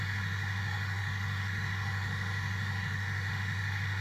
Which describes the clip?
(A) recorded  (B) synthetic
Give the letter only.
B